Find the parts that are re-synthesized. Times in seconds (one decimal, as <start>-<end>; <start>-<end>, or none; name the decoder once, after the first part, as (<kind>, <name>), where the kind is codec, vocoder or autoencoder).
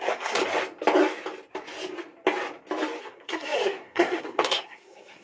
0.0-0.4 (codec, SNAC); 3.0-5.2